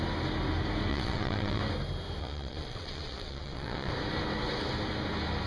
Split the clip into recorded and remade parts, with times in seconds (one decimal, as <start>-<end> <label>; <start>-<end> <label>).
0.0-0.9 recorded; 0.9-1.6 remade; 1.6-2.2 recorded; 2.2-3.9 remade; 3.9-5.5 recorded